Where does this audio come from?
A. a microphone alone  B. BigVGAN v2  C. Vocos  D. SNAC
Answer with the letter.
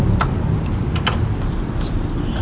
A